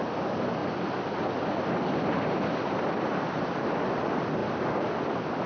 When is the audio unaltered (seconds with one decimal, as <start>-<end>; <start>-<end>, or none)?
0.0-5.5